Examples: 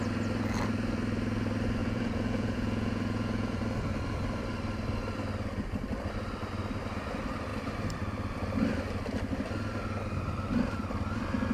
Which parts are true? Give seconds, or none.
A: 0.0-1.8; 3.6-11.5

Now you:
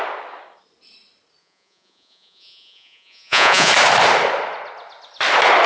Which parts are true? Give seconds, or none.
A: 0.0-1.4; 3.7-5.7

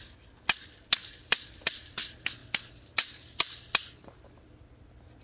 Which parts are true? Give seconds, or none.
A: 0.0-5.2